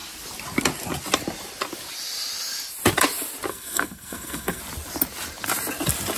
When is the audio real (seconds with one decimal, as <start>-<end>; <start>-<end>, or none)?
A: 0.0-3.5; 4.6-6.2